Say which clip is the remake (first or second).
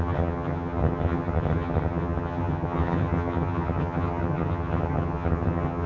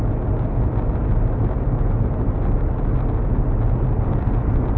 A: first